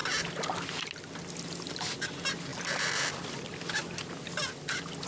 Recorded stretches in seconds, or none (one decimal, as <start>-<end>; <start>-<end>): 0.0-5.1